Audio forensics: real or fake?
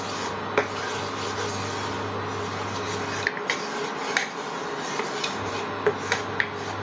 real